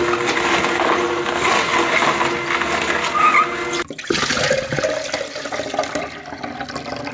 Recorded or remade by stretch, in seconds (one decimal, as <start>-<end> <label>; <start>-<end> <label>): 0.0-7.1 recorded